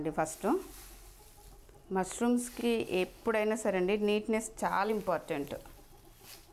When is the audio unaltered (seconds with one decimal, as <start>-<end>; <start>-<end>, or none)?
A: 0.0-6.5